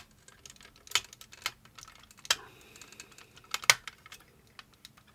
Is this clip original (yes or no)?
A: yes